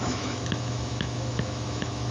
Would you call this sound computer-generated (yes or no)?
yes